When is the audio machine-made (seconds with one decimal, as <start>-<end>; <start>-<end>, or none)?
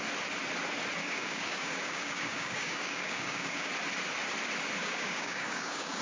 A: 1.0-3.7; 4.8-6.0